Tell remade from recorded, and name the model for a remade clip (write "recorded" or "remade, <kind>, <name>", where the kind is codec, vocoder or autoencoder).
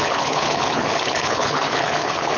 remade, codec, HILCodec